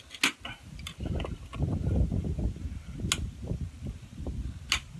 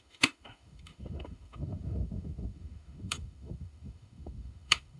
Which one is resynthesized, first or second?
second